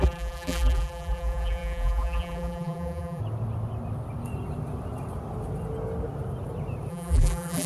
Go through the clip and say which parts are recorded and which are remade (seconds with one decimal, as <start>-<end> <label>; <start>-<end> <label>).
0.0-3.2 remade; 3.2-6.9 recorded; 6.9-7.7 remade

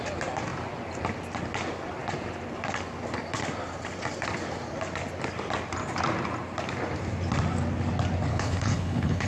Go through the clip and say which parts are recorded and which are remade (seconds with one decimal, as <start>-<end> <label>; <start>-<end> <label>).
0.0-8.3 recorded; 8.3-9.3 remade

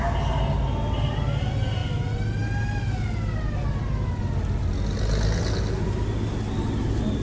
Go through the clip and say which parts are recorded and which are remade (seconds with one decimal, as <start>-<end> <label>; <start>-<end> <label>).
0.0-7.2 recorded